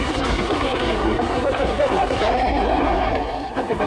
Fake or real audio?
fake